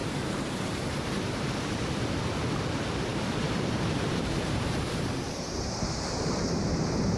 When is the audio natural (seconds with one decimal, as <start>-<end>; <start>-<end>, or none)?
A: 1.9-3.1; 6.4-7.2